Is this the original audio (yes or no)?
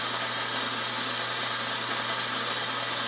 yes